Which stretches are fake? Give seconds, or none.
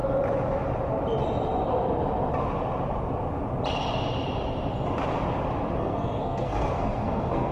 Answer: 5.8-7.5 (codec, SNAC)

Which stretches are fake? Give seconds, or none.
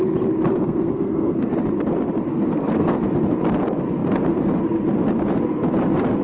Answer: 0.6-1.5 (codec, SNAC); 2.3-3.0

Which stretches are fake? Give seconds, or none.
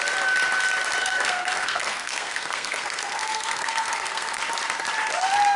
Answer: 1.0-4.4 (codec, SNAC)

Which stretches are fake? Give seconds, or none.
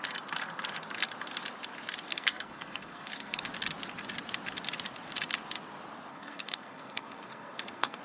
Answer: 2.1-3.4 (codec, SNAC); 6.1-8.0